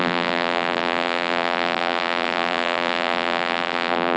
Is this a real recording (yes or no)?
no